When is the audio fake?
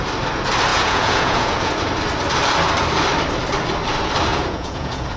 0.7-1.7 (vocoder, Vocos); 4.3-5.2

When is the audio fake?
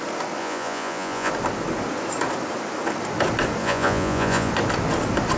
0.4-1.3 (vocoder, Vocos); 3.6-4.5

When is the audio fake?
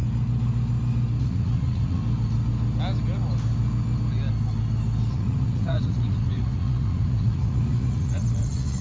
1.2-2.0 (vocoder, Vocos); 5.1-8.8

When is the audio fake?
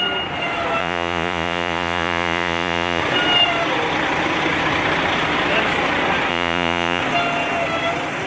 0.8-3.0 (vocoder, Vocos); 6.3-7.0